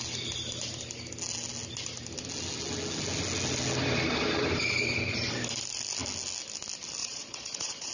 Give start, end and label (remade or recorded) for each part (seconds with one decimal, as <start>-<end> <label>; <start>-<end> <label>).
0.0-7.0 recorded; 7.0-7.9 remade